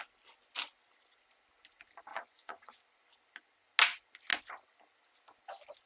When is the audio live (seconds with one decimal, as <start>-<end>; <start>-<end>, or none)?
0.0-2.1; 2.8-5.9

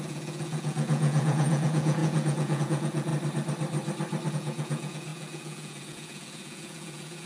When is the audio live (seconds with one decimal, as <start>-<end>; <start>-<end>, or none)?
3.1-4.3

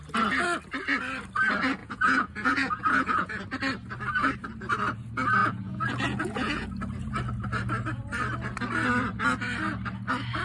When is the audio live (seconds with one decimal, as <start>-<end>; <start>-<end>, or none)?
0.0-1.8; 3.4-5.4; 6.7-10.4

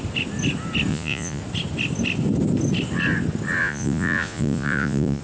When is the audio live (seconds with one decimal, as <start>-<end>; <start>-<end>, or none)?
0.0-0.9; 1.4-3.6

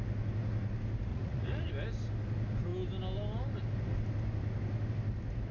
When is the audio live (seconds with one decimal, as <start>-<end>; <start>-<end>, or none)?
0.0-1.1; 1.7-5.5

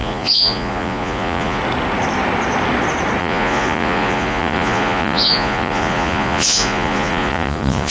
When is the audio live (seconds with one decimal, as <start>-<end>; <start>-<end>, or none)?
1.6-3.2

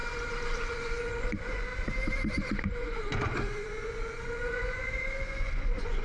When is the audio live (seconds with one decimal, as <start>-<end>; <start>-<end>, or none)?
0.0-0.6; 1.7-2.3